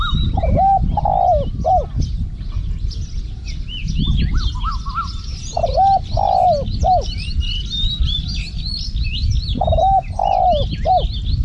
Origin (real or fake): real